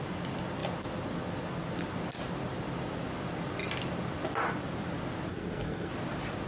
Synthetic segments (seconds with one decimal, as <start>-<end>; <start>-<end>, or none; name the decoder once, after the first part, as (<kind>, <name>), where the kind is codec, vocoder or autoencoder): 5.3-5.9 (codec, SNAC)